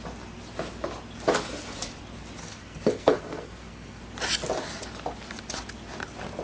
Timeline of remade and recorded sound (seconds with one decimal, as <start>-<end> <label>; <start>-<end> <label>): 0.0-2.4 recorded; 2.4-4.0 remade; 4.0-6.4 recorded